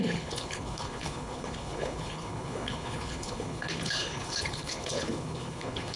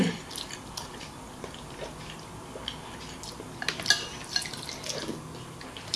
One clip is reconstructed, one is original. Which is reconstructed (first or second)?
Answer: first